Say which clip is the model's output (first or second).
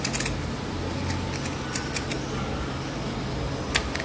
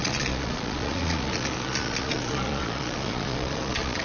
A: second